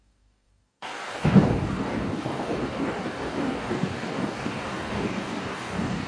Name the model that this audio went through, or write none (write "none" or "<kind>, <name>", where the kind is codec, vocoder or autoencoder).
codec, DAC